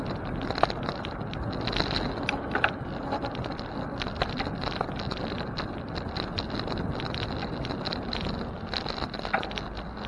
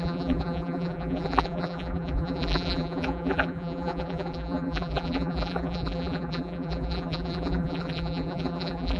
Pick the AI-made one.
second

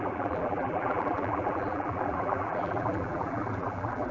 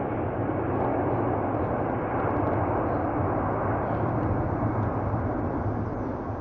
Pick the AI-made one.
first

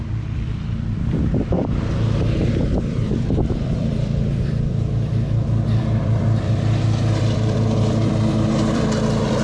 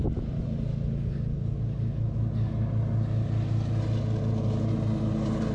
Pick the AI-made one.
first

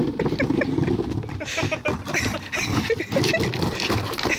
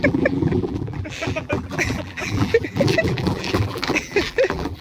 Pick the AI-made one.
second